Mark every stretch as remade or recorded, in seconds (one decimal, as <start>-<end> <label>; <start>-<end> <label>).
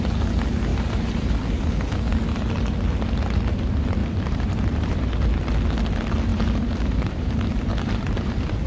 0.0-0.7 recorded; 0.7-1.2 remade; 1.2-4.0 recorded; 4.0-5.1 remade; 5.1-6.3 recorded; 6.3-8.7 remade